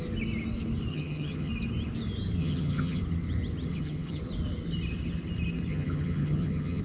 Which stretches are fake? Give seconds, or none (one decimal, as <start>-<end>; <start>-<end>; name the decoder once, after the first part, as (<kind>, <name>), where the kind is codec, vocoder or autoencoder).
0.9-1.5 (vocoder, HiFi-GAN); 2.4-3.0; 3.7-4.2; 5.7-6.8